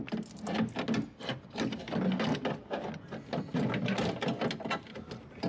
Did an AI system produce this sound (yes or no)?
no